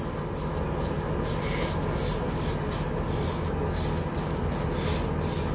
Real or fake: real